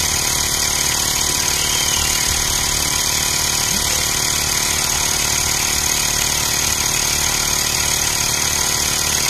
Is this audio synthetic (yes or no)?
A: no